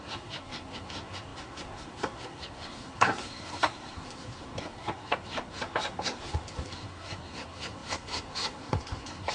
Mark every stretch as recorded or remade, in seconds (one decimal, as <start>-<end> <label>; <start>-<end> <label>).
0.0-9.3 remade